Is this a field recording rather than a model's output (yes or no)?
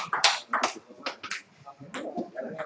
yes